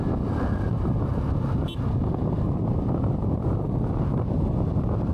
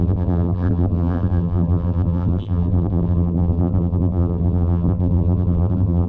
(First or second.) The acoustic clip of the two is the first